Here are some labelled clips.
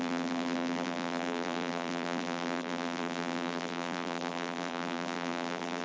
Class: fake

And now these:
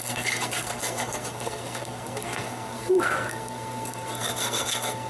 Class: fake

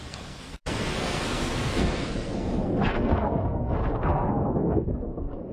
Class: fake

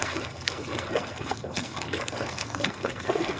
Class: fake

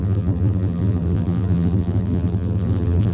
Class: fake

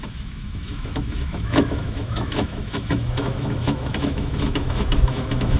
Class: fake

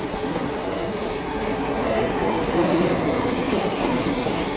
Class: fake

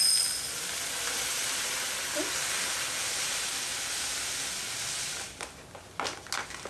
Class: real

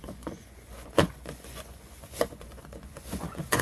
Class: fake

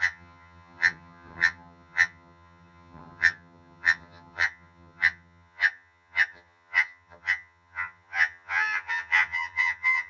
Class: fake